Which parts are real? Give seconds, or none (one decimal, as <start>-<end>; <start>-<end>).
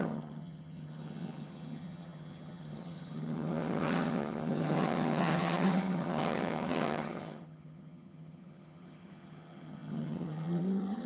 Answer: none